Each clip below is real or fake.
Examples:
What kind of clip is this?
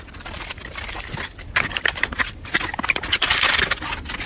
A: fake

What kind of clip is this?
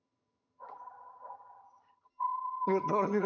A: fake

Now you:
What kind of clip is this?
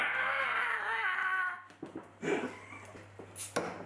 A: real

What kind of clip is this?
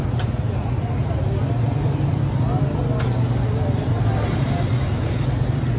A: real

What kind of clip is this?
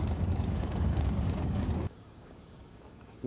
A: fake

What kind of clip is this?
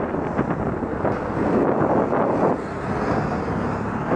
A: real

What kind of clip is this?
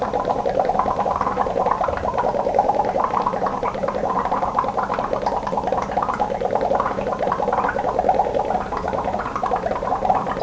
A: fake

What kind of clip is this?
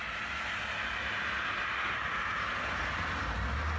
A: real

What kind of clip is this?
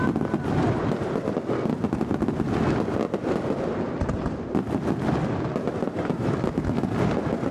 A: real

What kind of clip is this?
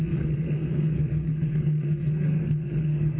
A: fake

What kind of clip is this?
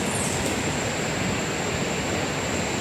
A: real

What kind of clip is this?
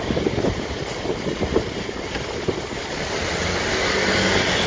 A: real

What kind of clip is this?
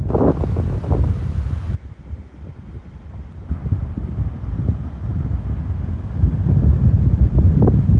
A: real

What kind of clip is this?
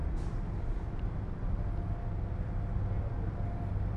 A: real